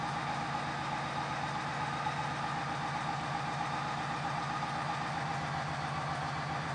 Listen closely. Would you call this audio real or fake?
real